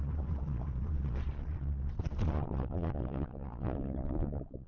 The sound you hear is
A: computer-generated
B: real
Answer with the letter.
A